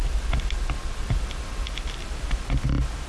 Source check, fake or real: real